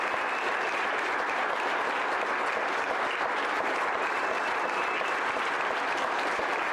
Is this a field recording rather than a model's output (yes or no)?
yes